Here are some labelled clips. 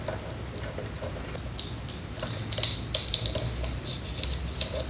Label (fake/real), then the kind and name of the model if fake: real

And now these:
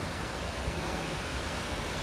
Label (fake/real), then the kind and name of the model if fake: fake, codec, SNAC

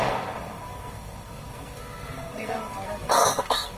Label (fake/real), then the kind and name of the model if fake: fake, codec, SNAC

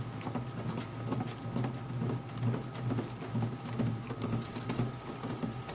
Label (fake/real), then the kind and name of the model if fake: real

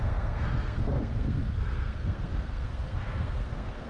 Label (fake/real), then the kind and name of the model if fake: fake, codec, SNAC